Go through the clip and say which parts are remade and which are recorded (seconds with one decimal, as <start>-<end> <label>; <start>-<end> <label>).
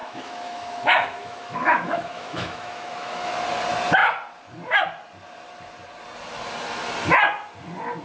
0.0-3.3 remade; 3.3-8.0 recorded